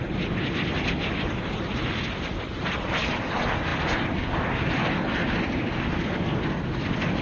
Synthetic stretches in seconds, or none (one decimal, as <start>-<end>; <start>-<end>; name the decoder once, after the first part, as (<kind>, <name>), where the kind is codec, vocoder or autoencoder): none

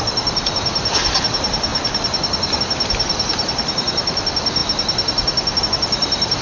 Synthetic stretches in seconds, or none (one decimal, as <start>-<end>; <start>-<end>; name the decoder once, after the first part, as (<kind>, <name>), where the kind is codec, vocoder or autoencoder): none

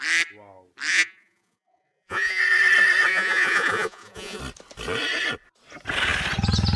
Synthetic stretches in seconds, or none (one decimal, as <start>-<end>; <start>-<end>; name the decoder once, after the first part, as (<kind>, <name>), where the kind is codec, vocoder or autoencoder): 0.9-2.4 (vocoder, Vocos); 3.1-4.4

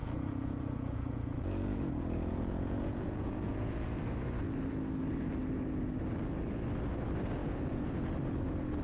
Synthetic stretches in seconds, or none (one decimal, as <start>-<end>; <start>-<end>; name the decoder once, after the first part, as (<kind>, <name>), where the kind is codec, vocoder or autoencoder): 0.0-4.0 (vocoder, Vocos); 7.4-8.0

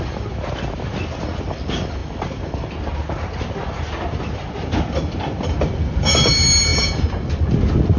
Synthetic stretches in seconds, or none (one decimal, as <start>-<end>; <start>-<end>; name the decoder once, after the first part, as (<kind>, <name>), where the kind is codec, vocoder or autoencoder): none

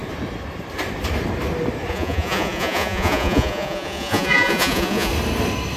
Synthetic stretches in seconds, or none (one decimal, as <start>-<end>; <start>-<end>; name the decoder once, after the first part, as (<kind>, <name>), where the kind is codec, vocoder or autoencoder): 1.9-5.1 (vocoder, Vocos)

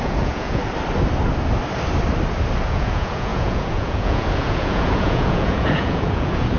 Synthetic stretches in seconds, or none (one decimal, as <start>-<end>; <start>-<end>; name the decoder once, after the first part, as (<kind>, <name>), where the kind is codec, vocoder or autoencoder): 0.0-0.6 (vocoder, Vocos); 2.7-6.6

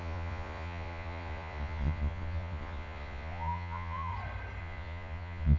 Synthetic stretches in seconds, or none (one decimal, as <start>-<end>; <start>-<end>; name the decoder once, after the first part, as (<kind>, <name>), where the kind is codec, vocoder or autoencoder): 0.0-4.1 (vocoder, Vocos); 4.6-5.6